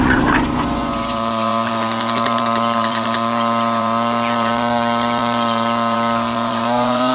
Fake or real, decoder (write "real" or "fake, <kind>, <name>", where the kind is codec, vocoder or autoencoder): fake, vocoder, Vocos